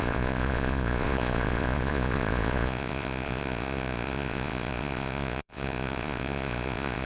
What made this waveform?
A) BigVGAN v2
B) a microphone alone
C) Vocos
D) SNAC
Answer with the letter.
C